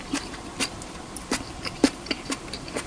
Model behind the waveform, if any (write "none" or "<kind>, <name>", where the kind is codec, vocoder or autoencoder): vocoder, BigVGAN v2